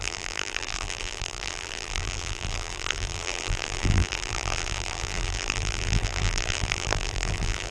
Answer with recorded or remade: remade